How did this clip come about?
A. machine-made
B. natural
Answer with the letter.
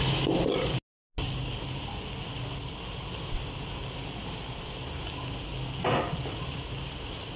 B